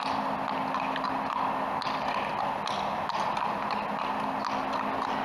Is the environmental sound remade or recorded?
recorded